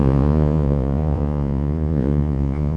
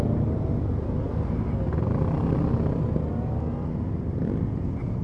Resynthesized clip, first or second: first